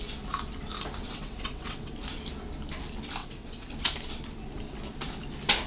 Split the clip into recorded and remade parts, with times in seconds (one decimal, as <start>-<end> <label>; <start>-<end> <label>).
0.0-1.0 recorded; 1.0-1.9 remade; 1.9-3.2 recorded; 3.2-3.7 remade; 3.7-5.7 recorded